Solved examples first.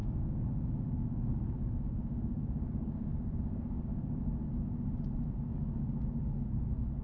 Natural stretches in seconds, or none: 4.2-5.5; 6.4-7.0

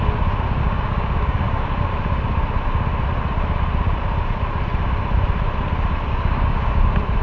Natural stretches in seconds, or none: 0.0-0.6; 1.8-6.1; 6.8-7.2

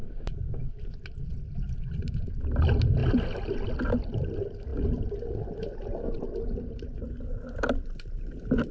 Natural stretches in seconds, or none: 0.8-8.7

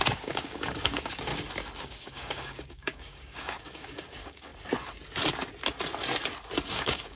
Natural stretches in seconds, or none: 1.3-1.8; 4.5-6.7

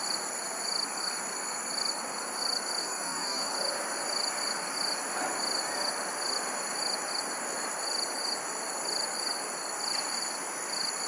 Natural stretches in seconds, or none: 0.0-2.8; 3.5-11.1

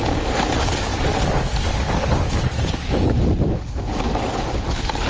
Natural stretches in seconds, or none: none